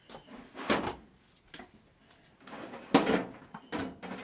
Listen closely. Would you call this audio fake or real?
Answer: real